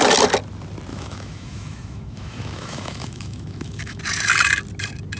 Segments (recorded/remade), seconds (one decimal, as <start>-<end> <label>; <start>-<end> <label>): 0.0-0.9 recorded; 0.9-4.0 remade; 4.0-5.2 recorded